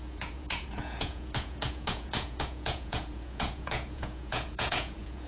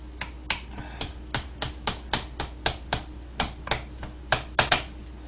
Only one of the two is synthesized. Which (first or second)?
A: first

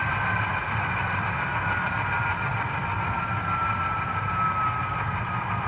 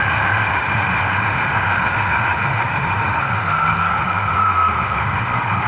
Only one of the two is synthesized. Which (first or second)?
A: second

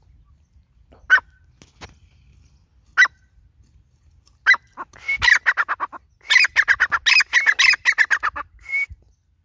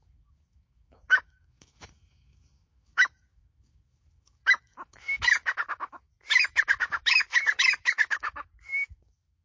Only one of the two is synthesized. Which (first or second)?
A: second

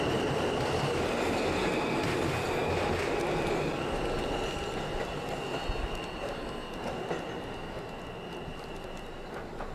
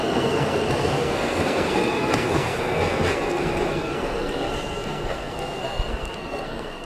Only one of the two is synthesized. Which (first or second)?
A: second